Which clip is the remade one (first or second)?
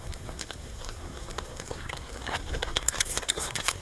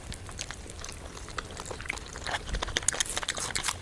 first